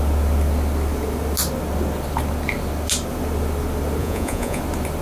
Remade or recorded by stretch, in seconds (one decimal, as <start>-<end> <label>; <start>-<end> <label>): 0.0-4.0 recorded; 4.0-4.6 remade; 4.6-5.0 recorded